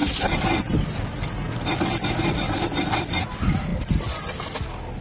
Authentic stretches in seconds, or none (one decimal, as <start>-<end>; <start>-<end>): 0.0-5.0